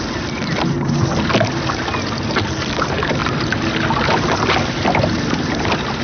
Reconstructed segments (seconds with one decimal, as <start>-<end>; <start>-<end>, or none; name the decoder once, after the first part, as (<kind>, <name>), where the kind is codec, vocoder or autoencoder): none